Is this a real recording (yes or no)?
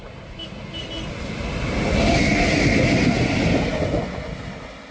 yes